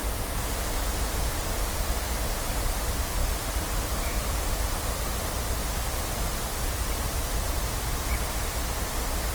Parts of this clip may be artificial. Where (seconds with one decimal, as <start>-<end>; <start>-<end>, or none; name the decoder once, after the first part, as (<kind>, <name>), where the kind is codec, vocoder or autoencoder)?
3.2-4.0 (vocoder, BigVGAN v2); 5.6-8.6